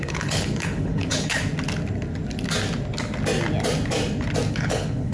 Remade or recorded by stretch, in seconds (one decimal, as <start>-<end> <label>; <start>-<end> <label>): 0.0-1.4 remade; 1.4-4.5 recorded; 4.5-5.1 remade